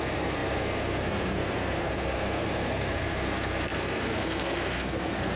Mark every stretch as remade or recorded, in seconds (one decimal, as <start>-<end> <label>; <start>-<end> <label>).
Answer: 0.0-5.4 remade